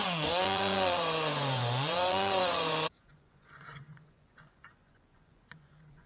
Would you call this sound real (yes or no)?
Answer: no